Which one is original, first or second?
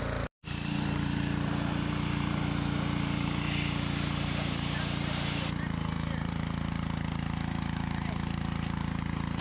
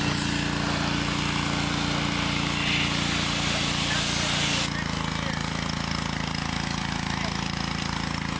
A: second